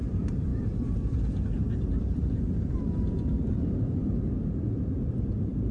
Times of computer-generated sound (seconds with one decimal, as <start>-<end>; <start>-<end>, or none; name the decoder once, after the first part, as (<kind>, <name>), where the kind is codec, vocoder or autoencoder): 0.0-4.0 (vocoder, BigVGAN v2); 4.6-5.7